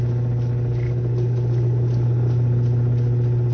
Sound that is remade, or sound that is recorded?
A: recorded